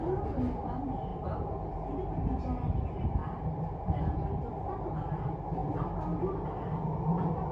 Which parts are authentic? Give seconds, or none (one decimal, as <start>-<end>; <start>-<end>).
0.0-7.5